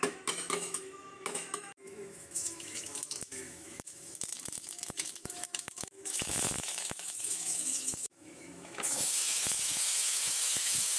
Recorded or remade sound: remade